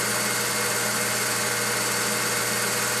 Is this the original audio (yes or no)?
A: yes